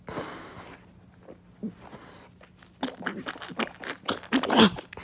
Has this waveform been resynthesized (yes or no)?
no